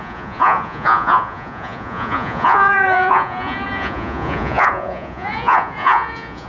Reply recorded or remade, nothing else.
remade